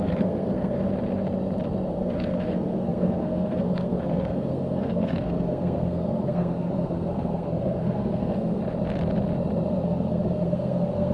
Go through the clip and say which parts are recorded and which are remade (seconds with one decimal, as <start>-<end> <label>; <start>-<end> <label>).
0.0-0.9 remade; 0.9-1.9 recorded; 1.9-8.6 remade; 8.6-9.7 recorded; 9.7-11.1 remade